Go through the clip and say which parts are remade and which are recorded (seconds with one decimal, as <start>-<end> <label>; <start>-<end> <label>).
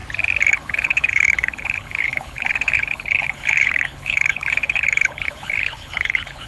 0.0-0.5 recorded; 0.5-6.5 remade